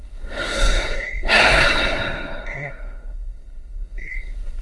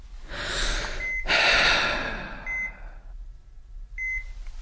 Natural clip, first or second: second